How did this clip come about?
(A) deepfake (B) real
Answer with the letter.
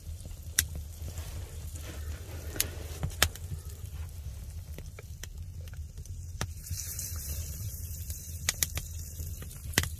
A